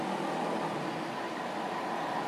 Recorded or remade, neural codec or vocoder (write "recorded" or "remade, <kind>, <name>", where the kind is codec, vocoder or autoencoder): recorded